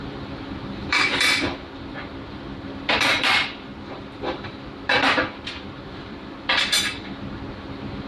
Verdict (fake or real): fake